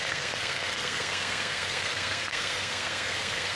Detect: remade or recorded remade